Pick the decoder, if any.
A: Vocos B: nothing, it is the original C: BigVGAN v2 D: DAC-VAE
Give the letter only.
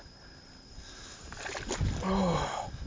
B